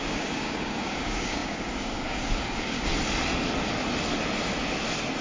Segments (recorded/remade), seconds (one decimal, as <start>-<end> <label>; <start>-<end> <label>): 0.0-2.9 remade; 2.9-5.2 recorded

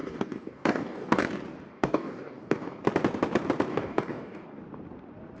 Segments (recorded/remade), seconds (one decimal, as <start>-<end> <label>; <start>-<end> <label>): 0.0-1.2 remade; 1.2-1.7 recorded; 1.7-2.8 remade; 2.8-3.7 recorded; 3.7-4.6 remade; 4.6-5.4 recorded

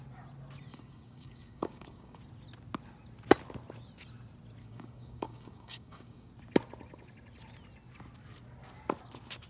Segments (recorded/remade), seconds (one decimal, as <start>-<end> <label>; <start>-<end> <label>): 0.0-0.7 recorded; 0.7-2.2 remade; 2.2-4.6 recorded; 4.6-6.3 remade; 6.3-9.5 recorded

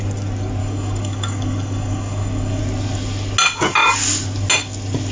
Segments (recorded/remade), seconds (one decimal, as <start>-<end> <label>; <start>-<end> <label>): 0.0-0.6 recorded; 0.6-2.6 remade; 2.6-5.1 recorded

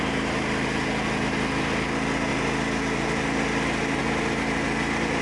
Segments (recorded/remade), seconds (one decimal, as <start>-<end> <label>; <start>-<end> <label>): 0.0-5.2 recorded

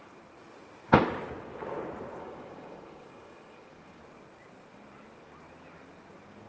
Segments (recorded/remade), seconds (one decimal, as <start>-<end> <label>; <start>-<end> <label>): 0.0-2.2 recorded; 2.2-4.0 remade; 4.0-6.5 recorded